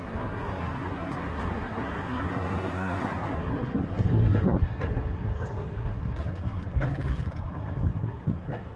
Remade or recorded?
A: remade